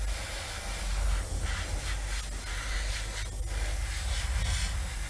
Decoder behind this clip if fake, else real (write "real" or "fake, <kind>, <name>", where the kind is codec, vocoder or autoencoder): real